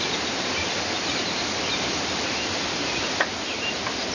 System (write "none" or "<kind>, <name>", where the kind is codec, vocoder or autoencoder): none